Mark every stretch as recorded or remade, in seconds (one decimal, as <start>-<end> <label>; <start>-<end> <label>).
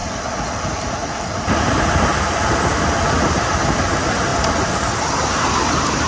0.0-4.3 remade; 4.3-6.1 recorded